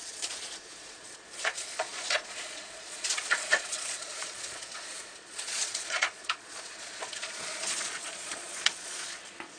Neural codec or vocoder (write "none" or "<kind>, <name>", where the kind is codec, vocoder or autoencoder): vocoder, Vocos